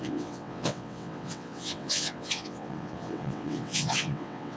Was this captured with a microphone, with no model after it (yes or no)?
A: no